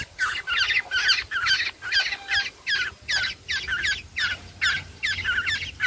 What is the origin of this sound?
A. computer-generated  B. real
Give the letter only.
B